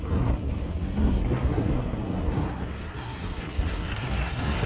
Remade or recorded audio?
remade